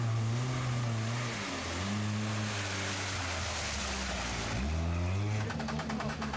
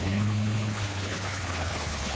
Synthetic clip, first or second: second